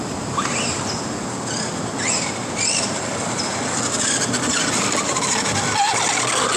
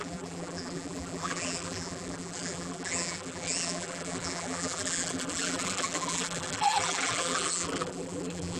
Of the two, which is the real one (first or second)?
first